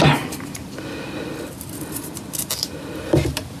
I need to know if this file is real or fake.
real